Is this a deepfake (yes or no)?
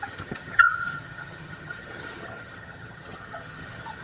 yes